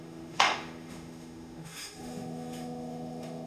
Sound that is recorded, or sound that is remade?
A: remade